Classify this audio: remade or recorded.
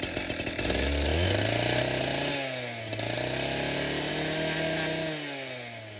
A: recorded